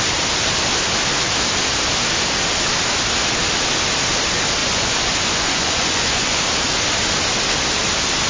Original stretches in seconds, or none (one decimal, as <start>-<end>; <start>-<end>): 0.0-4.6; 6.4-8.3